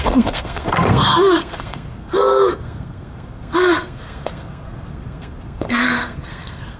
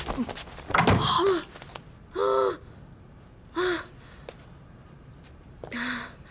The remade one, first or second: first